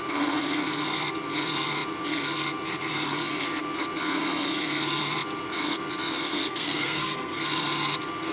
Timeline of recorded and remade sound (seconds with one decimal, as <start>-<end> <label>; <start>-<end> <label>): 0.0-6.4 recorded; 6.4-7.4 remade; 7.4-8.3 recorded